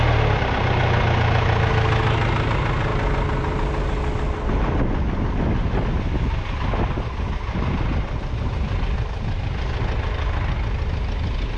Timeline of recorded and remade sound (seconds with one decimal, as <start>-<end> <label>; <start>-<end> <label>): 0.0-11.6 recorded